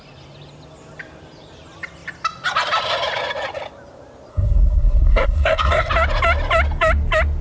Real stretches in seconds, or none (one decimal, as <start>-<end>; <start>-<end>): 0.0-4.3; 5.9-7.4